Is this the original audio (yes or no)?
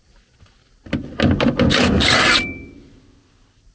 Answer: yes